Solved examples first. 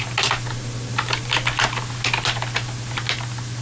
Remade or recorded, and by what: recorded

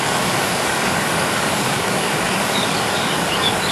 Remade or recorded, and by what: remade, codec, DAC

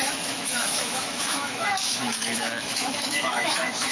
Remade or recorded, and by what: remade, autoencoder, DAC-VAE